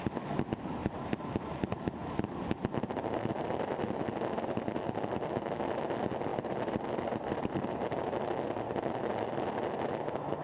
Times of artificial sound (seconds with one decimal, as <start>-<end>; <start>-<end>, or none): 0.8-1.4; 6.3-8.2